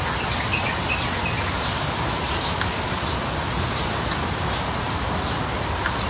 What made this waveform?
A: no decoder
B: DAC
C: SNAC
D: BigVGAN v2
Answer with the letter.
A